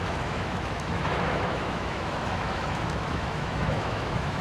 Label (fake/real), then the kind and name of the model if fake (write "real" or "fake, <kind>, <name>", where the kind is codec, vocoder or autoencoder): fake, autoencoder, DAC-VAE